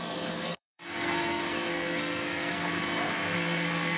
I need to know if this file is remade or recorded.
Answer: remade